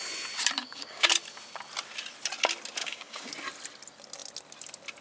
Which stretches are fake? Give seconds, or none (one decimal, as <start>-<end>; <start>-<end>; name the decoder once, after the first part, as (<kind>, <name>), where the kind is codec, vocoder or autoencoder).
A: 0.6-1.1 (codec, DAC); 2.8-3.3